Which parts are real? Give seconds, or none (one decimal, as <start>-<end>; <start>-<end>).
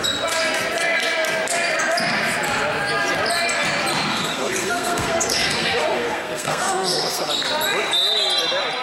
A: 0.0-4.1; 7.3-8.8